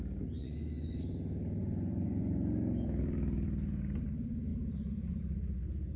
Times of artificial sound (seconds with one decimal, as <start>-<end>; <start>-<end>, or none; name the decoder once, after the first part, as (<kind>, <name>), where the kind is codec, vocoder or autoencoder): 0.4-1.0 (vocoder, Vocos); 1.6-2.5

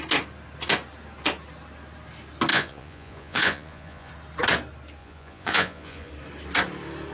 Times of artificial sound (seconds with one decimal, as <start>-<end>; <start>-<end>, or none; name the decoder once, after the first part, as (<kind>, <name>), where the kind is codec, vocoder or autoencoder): 2.5-4.1 (vocoder, Vocos); 5.0-6.1

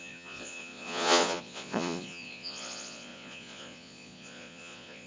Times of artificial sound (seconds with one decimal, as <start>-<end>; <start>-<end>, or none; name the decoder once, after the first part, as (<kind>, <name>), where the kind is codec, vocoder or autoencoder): 0.0-5.1 (vocoder, Vocos)

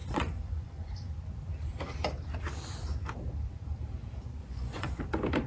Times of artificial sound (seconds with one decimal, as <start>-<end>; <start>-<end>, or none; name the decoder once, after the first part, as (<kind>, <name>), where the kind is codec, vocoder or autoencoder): 0.0-0.9 (vocoder, Vocos); 4.4-5.0

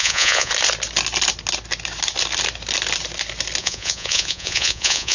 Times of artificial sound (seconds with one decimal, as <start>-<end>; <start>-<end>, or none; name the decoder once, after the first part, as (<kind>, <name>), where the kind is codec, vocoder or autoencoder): 0.0-0.5 (vocoder, Vocos); 3.6-5.1

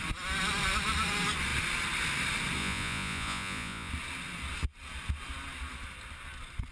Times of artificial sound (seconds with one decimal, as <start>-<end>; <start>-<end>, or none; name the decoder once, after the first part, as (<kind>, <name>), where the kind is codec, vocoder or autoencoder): 2.6-3.9 (vocoder, Vocos)

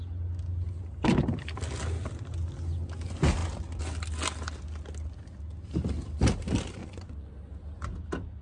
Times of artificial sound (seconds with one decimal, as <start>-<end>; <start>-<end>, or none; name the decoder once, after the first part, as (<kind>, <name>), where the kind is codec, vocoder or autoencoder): 6.8-7.3 (vocoder, Vocos)